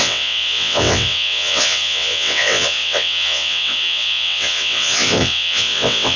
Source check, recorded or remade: remade